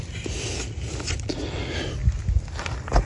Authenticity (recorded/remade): recorded